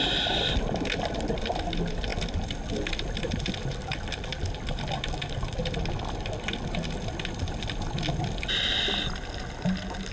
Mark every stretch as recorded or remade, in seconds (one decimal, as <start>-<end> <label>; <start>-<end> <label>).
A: 0.0-10.1 recorded